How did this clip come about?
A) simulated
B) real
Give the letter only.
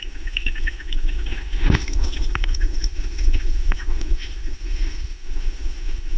A